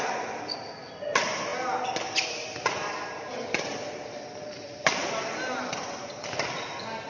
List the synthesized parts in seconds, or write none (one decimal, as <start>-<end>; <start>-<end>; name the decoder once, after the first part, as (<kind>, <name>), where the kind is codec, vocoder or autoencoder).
none